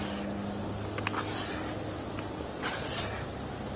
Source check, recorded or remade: recorded